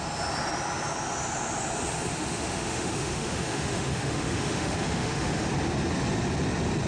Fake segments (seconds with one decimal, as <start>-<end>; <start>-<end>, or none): 2.1-5.5